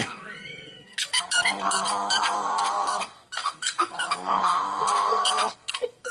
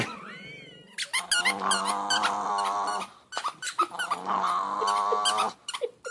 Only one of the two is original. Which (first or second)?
second